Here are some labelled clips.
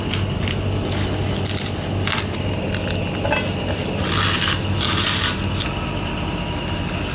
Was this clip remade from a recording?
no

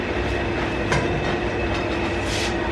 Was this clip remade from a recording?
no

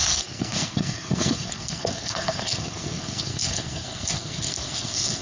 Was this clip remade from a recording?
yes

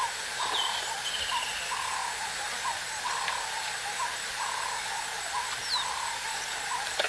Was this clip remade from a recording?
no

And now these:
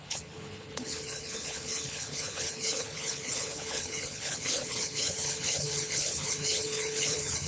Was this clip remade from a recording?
yes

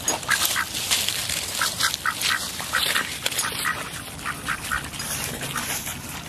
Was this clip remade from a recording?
no